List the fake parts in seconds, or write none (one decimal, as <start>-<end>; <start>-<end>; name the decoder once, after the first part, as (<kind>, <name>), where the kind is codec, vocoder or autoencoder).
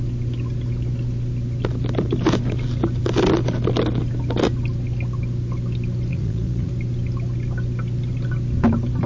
6.1-6.7 (vocoder, Vocos)